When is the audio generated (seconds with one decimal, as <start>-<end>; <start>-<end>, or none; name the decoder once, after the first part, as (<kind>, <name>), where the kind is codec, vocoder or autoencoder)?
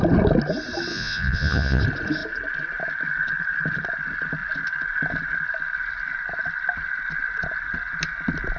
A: 0.9-1.8 (vocoder, Vocos)